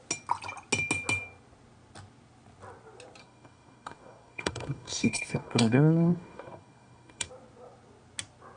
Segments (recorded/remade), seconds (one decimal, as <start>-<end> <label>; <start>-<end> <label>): 0.0-3.2 recorded; 3.2-7.3 remade; 7.3-8.6 recorded